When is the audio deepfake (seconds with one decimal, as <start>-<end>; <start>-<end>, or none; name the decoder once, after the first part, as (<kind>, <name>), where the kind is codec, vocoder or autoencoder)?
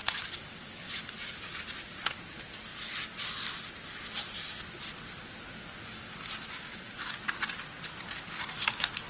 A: 0.0-1.4 (vocoder, BigVGAN v2)